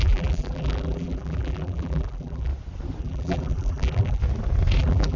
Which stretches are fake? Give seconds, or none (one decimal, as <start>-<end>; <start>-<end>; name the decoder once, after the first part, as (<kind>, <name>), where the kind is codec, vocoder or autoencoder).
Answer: 0.0-2.5 (vocoder, BigVGAN v2); 3.0-4.2; 4.8-5.2